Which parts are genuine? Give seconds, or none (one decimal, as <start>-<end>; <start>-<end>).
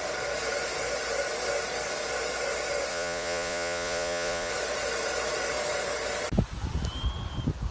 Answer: 0.0-2.9; 4.5-7.7